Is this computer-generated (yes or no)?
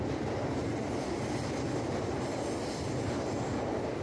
no